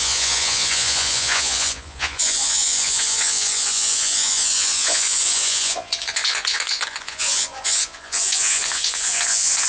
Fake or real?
fake